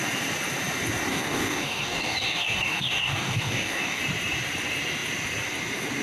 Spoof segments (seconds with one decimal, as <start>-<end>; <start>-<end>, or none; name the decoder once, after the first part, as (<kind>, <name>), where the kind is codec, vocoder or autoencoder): 1.1-4.0 (codec, DAC)